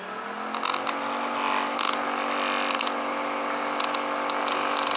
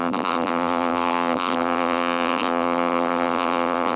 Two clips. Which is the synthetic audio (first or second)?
second